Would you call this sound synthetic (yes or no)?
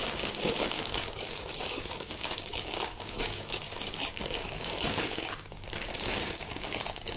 yes